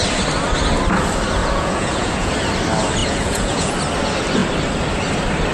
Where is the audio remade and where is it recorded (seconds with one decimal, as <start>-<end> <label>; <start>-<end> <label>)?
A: 0.0-1.4 recorded; 1.4-2.3 remade; 2.3-3.0 recorded; 3.0-3.7 remade; 3.7-5.5 recorded